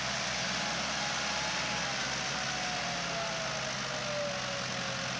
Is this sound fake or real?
real